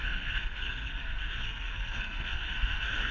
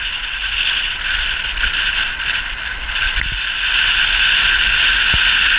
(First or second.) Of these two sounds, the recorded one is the second